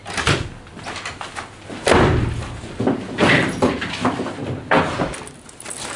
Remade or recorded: recorded